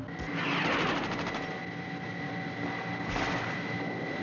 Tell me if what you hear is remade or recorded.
recorded